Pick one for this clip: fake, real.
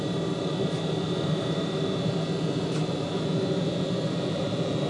real